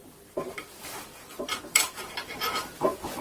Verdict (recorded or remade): remade